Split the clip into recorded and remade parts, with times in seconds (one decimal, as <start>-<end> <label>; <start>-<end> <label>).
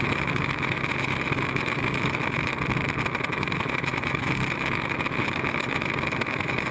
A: 0.0-2.5 remade; 2.5-3.0 recorded; 3.0-6.7 remade